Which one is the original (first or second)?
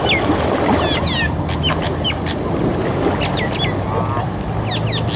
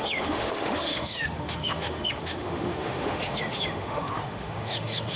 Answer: first